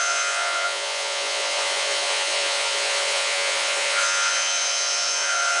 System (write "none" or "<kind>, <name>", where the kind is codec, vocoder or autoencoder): vocoder, Vocos